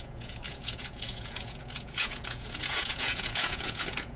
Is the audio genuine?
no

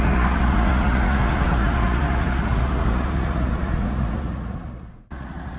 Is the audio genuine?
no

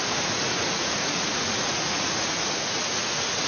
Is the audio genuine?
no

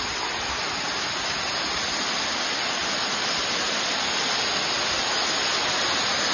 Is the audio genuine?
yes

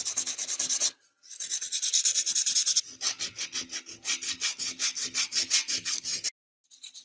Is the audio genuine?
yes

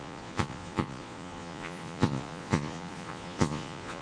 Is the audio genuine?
no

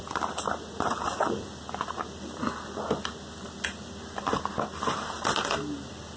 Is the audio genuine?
yes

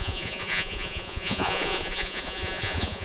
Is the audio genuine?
no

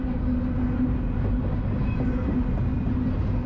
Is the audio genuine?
yes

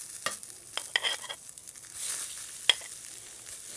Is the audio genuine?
yes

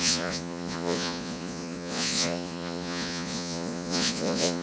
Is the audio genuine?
no